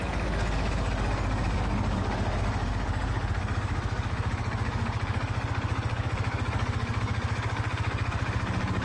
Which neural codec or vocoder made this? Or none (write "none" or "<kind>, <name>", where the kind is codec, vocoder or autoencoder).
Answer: codec, DAC